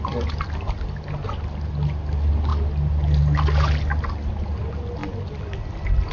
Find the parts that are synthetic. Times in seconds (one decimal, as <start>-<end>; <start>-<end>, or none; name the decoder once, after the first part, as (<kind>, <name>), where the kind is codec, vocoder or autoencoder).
none

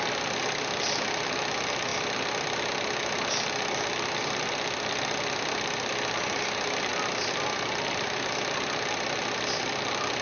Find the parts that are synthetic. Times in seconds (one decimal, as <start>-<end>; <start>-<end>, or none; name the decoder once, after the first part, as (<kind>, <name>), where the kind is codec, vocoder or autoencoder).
none

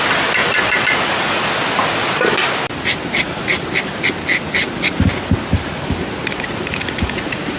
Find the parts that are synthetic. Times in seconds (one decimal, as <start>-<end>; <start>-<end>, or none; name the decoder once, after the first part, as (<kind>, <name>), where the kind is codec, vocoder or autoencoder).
0.4-1.4 (vocoder, Vocos); 6.3-7.6

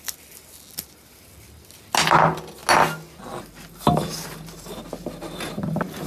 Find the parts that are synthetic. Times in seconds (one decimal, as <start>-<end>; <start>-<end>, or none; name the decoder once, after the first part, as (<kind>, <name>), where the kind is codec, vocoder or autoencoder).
none

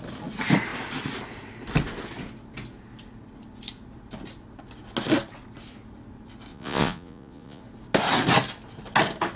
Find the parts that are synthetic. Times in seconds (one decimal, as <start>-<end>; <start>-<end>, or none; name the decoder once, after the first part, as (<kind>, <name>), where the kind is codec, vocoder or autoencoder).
6.5-7.6 (vocoder, Vocos)

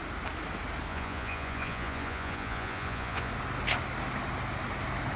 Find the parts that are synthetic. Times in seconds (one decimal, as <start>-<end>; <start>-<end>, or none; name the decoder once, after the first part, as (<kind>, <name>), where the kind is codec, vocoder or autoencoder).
0.9-3.3 (vocoder, Vocos)

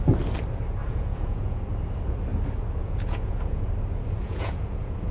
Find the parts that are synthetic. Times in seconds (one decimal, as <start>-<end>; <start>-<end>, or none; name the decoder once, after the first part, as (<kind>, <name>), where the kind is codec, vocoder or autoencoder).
0.8-1.6 (vocoder, Vocos); 2.8-3.7; 4.2-5.1